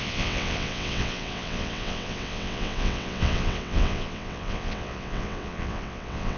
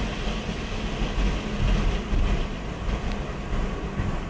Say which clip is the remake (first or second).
first